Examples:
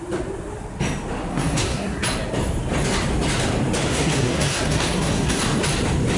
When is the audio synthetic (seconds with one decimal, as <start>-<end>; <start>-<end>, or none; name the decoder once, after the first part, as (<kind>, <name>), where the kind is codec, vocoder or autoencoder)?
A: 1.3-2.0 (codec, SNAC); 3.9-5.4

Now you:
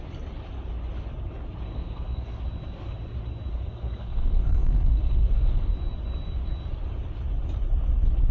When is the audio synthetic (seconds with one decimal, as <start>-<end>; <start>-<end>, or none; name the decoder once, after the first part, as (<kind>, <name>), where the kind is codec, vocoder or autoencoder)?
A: 1.7-2.4 (codec, SNAC); 3.5-5.7

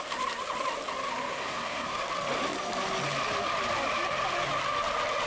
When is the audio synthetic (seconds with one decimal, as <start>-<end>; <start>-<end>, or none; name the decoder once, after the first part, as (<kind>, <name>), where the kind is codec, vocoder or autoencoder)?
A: 1.4-2.0 (codec, SNAC)

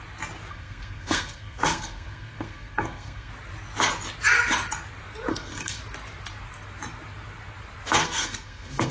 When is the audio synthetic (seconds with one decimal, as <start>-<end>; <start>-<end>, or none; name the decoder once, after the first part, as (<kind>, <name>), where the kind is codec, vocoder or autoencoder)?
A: 0.5-3.3 (codec, SNAC); 5.3-5.8; 8.0-8.9